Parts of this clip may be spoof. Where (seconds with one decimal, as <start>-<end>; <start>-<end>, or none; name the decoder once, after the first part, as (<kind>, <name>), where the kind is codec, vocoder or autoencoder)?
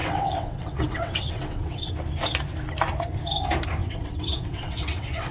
0.0-1.9 (vocoder, WaveNeXt); 3.8-5.3